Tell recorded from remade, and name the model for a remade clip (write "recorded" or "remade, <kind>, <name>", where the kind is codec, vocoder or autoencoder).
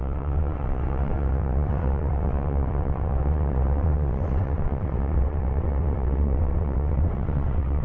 remade, vocoder, WaveNeXt